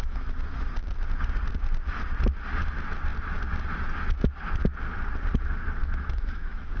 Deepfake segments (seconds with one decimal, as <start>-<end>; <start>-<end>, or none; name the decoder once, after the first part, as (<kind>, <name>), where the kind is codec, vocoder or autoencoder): 0.0-0.7 (autoencoder, DAC-VAE); 5.8-6.8